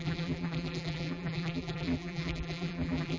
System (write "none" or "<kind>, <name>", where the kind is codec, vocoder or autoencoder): vocoder, BigVGAN v2